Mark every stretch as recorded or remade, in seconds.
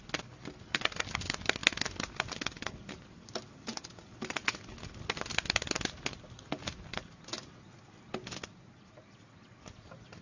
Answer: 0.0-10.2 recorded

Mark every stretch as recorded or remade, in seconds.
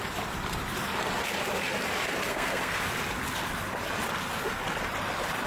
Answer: 0.0-2.3 recorded; 2.3-2.8 remade; 2.8-5.5 recorded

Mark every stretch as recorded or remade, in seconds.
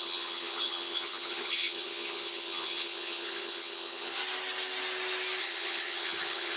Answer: 0.0-4.2 remade; 4.2-5.4 recorded; 5.4-6.6 remade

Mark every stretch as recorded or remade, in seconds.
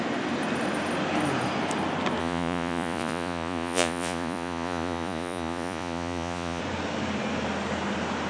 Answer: 0.0-2.2 recorded; 2.2-6.6 remade; 6.6-8.3 recorded